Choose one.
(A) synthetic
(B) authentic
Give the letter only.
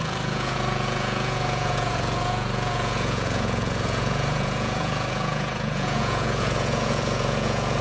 A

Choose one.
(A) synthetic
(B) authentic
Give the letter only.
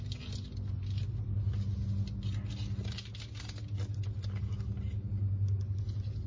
B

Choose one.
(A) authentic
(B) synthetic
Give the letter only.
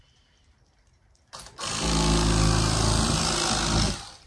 A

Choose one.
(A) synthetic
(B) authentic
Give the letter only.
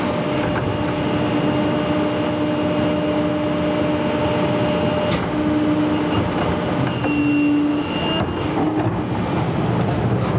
B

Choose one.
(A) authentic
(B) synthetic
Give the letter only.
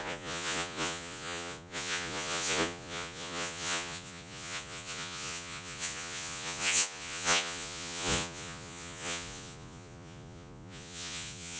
B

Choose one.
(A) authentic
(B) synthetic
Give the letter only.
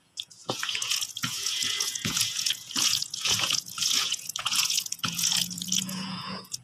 B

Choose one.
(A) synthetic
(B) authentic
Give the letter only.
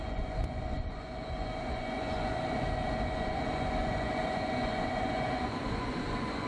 A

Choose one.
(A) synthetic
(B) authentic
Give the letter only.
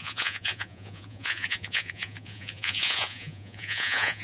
A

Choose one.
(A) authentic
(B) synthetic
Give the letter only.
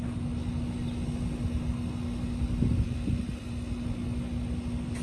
A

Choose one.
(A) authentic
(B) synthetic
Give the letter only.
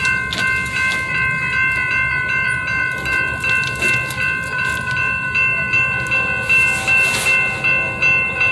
A